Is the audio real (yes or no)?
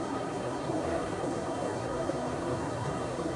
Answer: no